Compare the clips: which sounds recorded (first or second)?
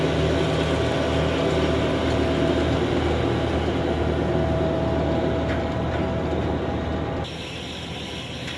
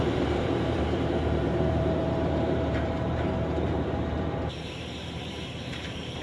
first